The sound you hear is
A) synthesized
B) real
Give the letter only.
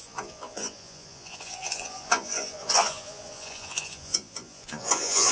A